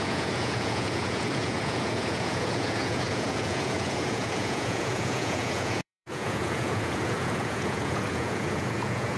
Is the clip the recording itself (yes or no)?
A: no